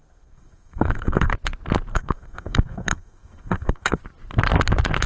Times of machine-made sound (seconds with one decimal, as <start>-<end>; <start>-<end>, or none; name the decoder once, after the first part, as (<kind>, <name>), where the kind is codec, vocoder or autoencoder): 0.0-1.3 (codec, SNAC); 1.9-4.0